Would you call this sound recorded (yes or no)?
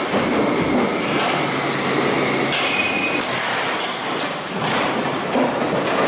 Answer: yes